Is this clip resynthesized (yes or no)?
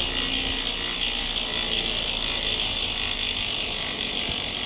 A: no